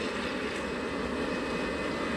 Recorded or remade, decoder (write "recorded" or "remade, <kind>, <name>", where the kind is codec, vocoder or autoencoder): recorded